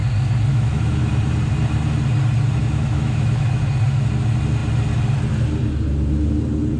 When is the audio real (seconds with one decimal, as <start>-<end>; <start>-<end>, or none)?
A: 0.0-0.5; 1.1-2.6; 3.5-6.8